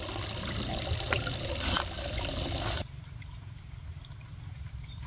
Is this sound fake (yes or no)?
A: no